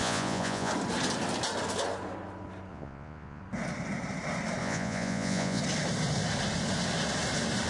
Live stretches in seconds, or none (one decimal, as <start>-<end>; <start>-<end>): 0.7-2.7; 3.4-4.6; 5.6-7.7